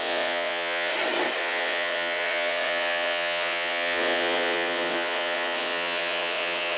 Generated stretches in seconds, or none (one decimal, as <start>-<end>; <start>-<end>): 0.0-0.9; 1.4-6.8